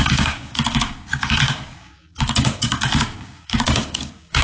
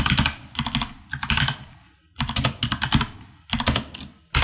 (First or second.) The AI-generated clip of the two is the first